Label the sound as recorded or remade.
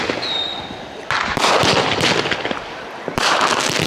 remade